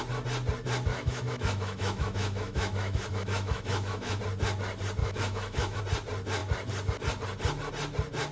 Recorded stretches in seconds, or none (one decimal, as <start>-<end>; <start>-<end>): 0.0-0.9; 4.2-5.0; 5.8-8.3